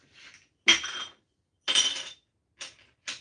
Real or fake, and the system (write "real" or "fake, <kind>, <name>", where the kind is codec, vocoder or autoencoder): real